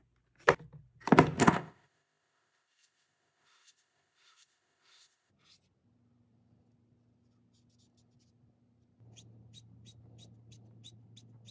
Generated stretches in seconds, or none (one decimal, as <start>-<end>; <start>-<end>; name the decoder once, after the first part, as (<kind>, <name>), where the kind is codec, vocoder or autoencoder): 1.4-5.3 (codec, ZipCodec)